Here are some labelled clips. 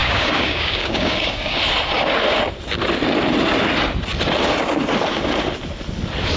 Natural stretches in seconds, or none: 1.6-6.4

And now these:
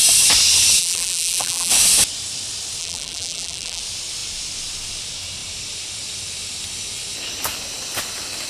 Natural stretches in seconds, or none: 0.0-0.8; 1.7-2.8; 3.8-8.5

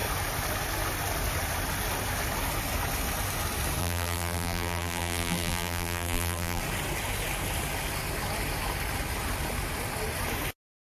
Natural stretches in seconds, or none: 0.0-3.8; 6.6-10.8

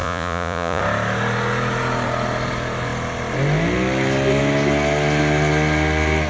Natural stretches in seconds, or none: 0.8-6.3